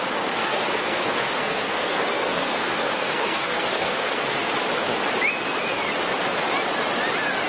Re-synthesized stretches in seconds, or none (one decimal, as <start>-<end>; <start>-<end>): 0.4-4.5